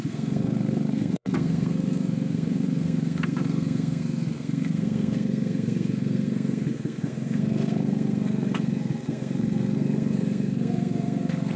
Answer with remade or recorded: remade